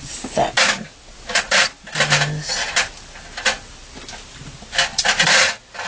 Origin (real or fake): real